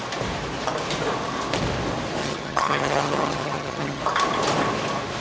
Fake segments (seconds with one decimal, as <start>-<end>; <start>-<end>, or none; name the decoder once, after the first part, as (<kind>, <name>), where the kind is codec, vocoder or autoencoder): 2.2-4.0 (vocoder, HiFi-GAN)